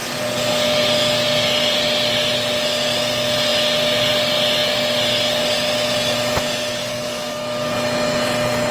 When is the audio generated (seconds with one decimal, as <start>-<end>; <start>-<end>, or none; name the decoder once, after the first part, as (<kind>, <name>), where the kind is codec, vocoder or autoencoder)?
6.8-7.7 (codec, DAC)